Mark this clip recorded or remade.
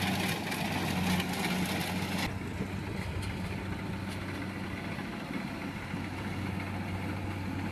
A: recorded